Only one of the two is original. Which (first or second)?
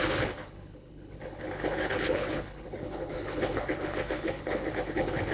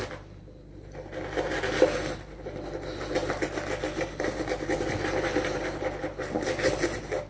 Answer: second